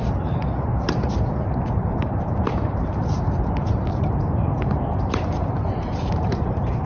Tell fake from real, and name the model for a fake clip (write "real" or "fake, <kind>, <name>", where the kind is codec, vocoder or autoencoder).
fake, vocoder, BigVGAN v2